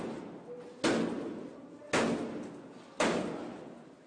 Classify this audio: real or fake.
real